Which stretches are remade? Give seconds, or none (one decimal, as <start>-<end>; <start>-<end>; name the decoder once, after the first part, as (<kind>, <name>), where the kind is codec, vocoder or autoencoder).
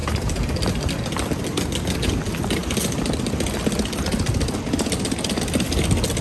0.0-0.9 (vocoder, BigVGAN v2); 2.6-3.2